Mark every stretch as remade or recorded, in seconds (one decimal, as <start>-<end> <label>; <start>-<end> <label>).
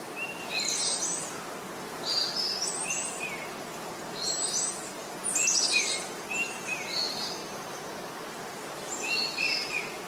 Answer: 0.0-7.4 remade; 7.4-8.3 recorded; 8.3-10.1 remade